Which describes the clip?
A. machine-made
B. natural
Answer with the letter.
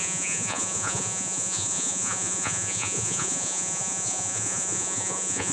A